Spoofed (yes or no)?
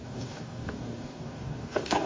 yes